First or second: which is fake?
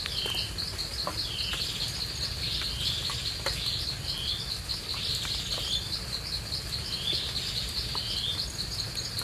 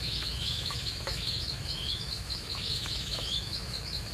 second